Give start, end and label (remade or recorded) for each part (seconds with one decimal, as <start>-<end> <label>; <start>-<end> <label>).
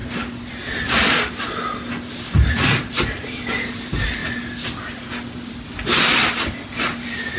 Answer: 0.0-2.5 recorded; 2.5-4.2 remade; 4.2-6.8 recorded; 6.8-7.4 remade